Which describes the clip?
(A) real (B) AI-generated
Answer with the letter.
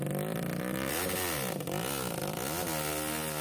A